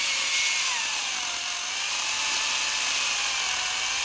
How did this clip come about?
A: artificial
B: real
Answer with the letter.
B